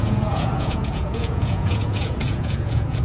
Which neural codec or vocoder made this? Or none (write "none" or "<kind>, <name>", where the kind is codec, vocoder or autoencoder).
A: vocoder, Vocos